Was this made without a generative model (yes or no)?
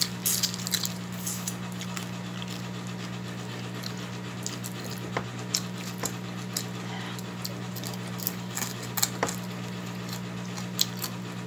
yes